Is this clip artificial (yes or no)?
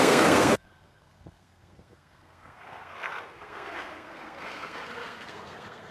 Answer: yes